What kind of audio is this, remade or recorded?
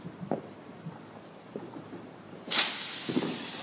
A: remade